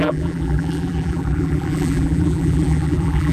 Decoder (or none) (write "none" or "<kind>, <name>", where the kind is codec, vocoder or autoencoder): vocoder, BigVGAN v2